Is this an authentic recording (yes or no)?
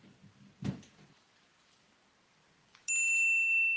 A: yes